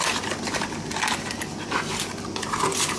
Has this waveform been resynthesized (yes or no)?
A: no